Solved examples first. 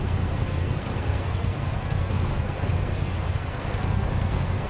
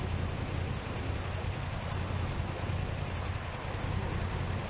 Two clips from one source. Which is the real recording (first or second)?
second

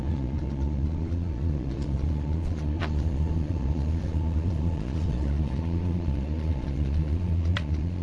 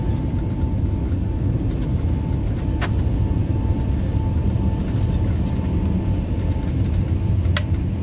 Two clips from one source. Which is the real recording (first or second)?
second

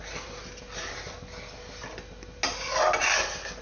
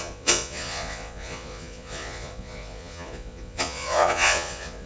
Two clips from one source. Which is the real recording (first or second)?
first